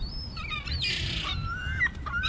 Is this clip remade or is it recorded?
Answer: remade